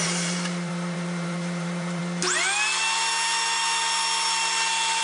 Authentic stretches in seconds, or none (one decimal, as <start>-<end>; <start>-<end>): 2.0-5.0